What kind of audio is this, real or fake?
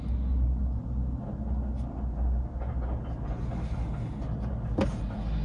real